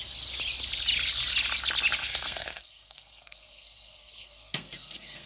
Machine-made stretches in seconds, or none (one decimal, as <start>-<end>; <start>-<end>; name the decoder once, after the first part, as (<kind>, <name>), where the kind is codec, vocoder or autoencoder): 2.0-5.3 (codec, SNAC)